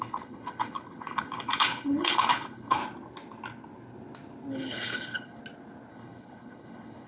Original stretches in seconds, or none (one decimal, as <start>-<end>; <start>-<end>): 2.8-4.5; 5.4-5.9